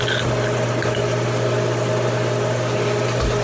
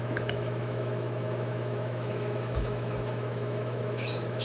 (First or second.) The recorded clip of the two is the first